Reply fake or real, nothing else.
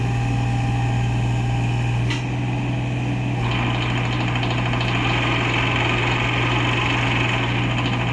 real